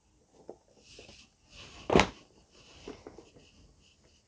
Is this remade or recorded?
recorded